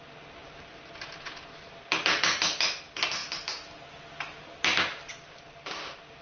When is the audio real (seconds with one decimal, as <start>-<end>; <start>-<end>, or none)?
0.0-6.2